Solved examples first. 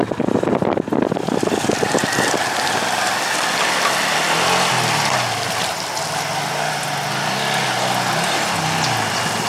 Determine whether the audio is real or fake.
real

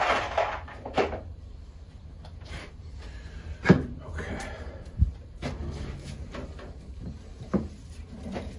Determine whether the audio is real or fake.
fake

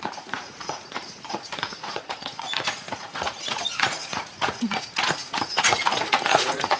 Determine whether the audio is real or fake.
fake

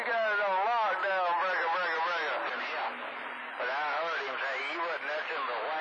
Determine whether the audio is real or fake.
real